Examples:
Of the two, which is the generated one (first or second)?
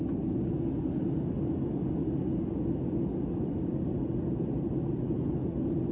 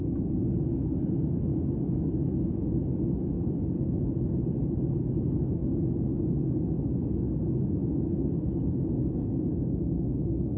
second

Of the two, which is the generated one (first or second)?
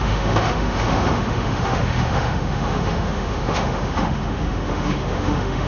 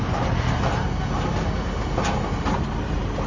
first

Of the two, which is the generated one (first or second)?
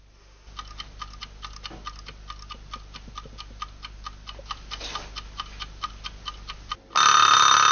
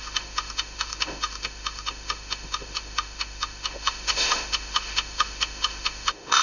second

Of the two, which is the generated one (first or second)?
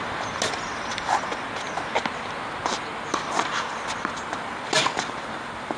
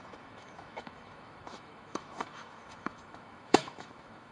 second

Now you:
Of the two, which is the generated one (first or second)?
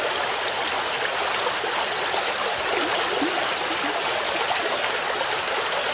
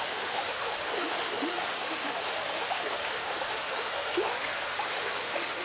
second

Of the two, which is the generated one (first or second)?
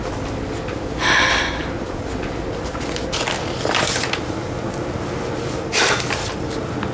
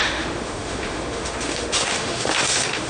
second